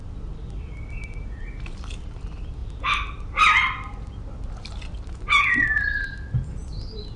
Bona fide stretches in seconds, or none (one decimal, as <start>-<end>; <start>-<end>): 0.0-7.2